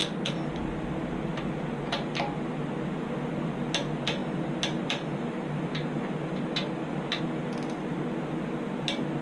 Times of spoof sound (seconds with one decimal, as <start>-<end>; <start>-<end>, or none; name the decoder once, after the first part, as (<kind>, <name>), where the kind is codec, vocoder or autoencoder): none